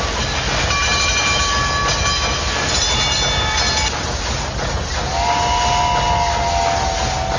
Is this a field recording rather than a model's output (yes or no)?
yes